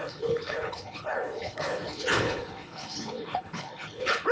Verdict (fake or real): fake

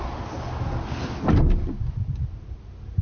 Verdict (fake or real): real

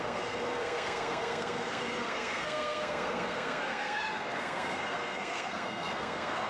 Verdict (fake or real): fake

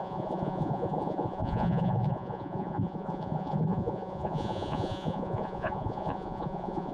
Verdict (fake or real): fake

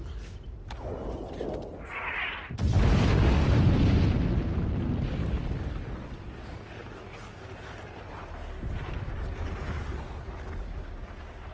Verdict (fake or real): real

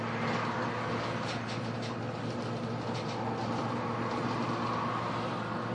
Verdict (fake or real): real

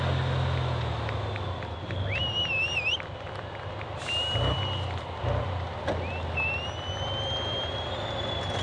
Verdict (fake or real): real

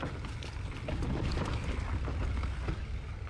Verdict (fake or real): real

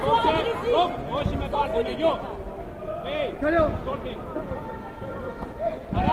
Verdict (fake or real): real